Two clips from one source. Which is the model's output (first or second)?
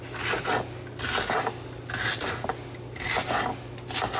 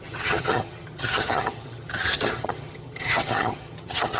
second